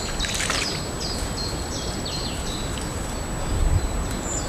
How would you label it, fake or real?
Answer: real